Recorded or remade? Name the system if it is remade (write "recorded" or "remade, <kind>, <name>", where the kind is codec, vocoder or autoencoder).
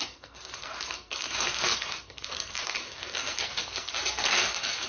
remade, codec, SNAC